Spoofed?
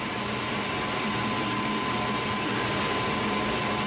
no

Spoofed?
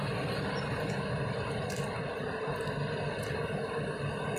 no